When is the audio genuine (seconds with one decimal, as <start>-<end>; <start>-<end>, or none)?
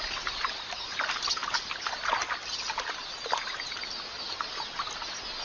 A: 0.0-5.4